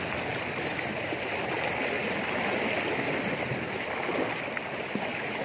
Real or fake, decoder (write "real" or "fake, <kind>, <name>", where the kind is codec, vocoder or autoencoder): real